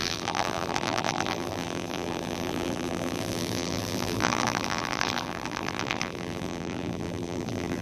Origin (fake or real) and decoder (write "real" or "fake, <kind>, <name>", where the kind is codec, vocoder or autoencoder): fake, vocoder, BigVGAN v2